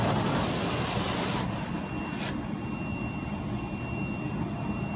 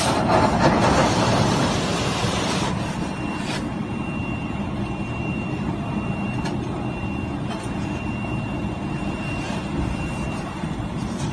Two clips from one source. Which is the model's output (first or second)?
second